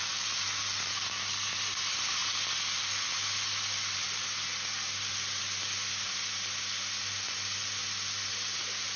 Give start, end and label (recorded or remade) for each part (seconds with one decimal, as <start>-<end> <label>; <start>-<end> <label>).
0.0-9.0 recorded